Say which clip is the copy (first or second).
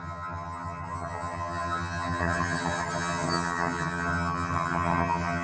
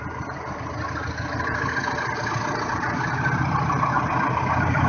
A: first